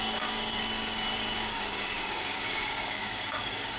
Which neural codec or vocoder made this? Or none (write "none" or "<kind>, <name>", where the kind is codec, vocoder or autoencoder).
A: codec, DAC